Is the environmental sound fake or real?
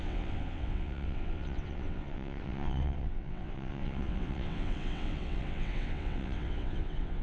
fake